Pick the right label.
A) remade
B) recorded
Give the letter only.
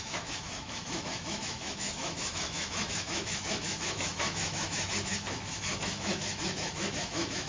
A